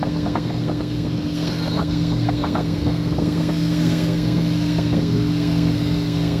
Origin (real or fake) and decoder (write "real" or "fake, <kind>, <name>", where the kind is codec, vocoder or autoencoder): fake, codec, SNAC